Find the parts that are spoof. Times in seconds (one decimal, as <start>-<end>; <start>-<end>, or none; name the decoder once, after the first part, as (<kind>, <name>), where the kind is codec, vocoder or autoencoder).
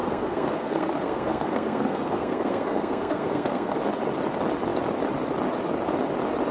0.0-3.8 (codec, SNAC)